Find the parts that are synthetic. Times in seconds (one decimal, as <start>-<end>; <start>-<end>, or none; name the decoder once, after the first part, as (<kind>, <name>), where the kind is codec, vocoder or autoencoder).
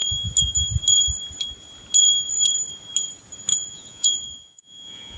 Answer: 3.5-5.2 (vocoder, Vocos)